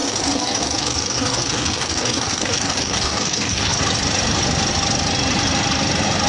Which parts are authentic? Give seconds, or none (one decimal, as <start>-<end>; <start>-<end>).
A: 3.8-6.3